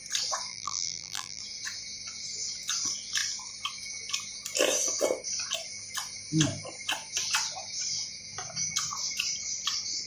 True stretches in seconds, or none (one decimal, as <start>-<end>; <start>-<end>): 0.0-0.5; 1.4-10.1